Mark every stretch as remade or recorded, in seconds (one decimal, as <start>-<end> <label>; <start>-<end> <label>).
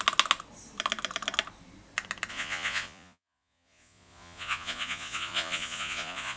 0.0-2.3 recorded; 2.3-6.4 remade